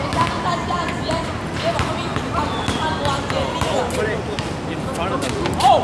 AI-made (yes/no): no